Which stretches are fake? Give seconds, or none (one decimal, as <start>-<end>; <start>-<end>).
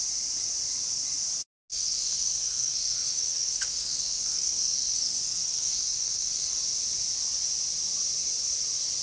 1.7-6.6